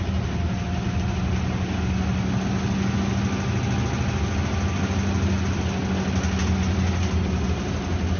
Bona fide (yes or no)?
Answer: yes